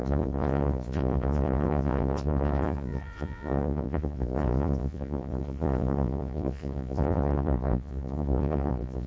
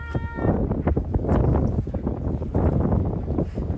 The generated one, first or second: first